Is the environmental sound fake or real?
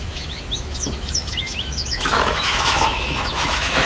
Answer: fake